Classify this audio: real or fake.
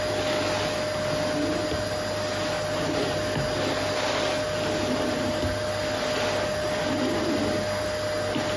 real